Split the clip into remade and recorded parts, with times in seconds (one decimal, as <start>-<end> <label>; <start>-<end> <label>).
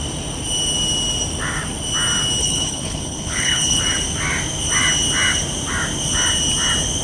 0.0-2.4 recorded; 2.4-3.8 remade; 3.8-7.0 recorded